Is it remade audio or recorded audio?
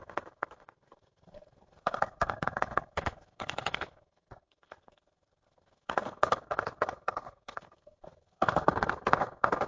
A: remade